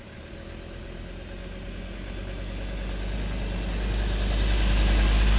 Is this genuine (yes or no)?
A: yes